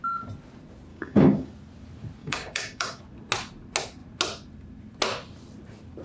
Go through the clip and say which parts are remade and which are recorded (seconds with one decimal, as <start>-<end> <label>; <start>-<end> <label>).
0.0-0.9 recorded; 0.9-1.5 remade; 1.5-2.2 recorded; 2.2-3.0 remade; 3.0-6.0 recorded